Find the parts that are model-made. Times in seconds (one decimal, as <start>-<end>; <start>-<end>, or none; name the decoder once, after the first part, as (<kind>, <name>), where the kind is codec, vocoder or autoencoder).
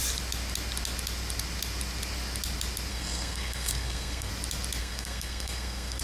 2.9-4.3 (codec, SNAC); 4.8-6.0